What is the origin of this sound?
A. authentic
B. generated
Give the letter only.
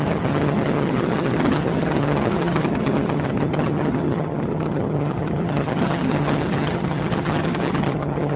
B